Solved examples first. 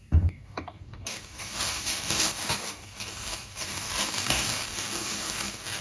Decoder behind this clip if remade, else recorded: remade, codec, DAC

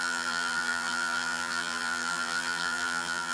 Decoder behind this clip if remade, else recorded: remade, vocoder, BigVGAN v2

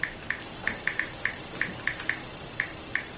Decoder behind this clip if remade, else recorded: recorded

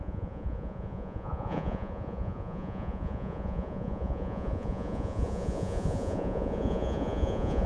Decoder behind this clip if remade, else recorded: remade, vocoder, Vocos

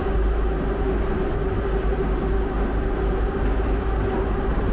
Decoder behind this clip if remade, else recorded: recorded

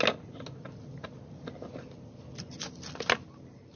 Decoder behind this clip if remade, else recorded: recorded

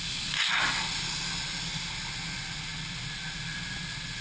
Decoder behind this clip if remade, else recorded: recorded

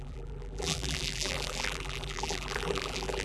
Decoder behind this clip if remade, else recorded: remade, vocoder, BigVGAN v2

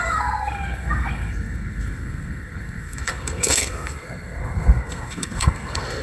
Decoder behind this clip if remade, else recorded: remade, codec, SNAC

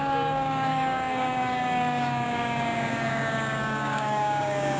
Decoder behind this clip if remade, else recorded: remade, codec, DAC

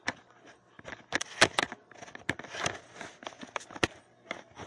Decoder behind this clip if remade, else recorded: recorded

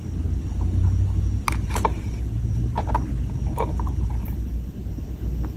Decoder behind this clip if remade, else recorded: recorded